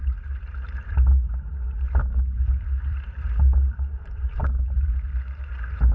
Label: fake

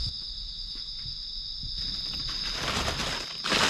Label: real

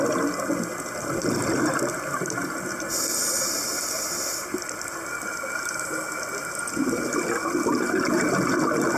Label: real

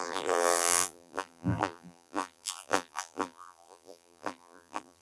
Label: fake